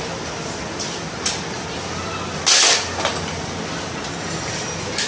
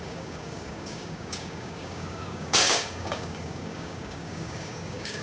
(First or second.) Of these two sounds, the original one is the first